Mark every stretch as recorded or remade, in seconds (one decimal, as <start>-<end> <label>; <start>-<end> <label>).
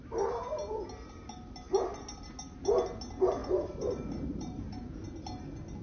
0.0-3.4 recorded; 3.4-4.9 remade; 4.9-5.8 recorded